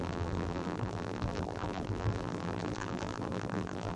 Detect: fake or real fake